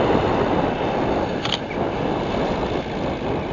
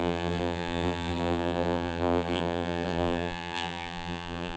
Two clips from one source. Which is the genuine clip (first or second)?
first